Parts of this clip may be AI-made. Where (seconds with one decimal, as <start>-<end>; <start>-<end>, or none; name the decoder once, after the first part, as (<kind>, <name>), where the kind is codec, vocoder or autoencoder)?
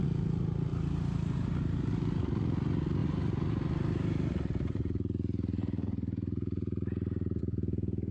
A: 0.7-2.2 (vocoder, BigVGAN v2); 3.0-7.4